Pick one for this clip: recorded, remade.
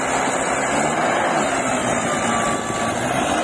recorded